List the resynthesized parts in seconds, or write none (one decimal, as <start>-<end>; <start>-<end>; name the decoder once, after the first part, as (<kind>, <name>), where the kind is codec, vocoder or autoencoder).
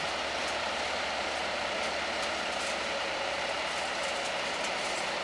0.4-3.5 (vocoder, BigVGAN v2)